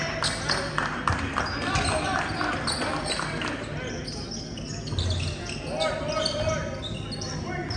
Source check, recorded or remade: recorded